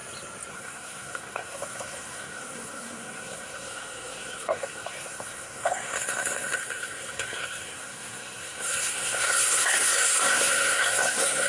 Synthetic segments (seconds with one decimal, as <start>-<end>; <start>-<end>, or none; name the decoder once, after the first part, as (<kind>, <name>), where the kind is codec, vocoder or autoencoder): 0.5-11.5 (codec, SNAC)

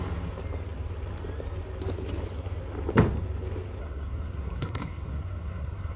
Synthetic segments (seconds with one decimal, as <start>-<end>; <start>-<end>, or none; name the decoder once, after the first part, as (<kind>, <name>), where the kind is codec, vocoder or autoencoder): 3.8-6.0 (codec, SNAC)

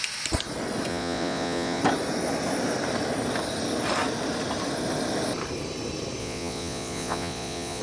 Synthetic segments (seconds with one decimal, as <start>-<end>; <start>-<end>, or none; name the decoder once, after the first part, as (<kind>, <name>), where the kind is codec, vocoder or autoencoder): 0.9-1.8 (vocoder, Vocos); 6.2-7.8

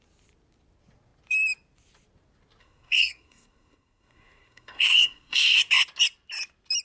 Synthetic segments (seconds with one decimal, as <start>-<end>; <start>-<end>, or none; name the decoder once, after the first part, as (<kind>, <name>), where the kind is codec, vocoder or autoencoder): 2.6-5.6 (codec, SNAC)

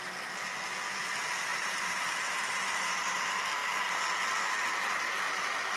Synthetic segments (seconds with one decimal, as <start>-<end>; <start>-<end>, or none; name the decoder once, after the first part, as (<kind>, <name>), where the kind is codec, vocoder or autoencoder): 1.5-3.2 (vocoder, BigVGAN v2)